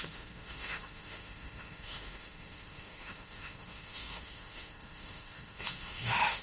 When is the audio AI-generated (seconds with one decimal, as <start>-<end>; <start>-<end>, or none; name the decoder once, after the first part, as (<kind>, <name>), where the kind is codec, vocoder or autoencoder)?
0.0-6.4 (autoencoder, DAC-VAE)